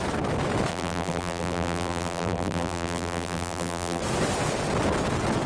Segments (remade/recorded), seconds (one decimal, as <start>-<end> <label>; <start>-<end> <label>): 0.0-0.7 recorded; 0.7-4.0 remade; 4.0-5.5 recorded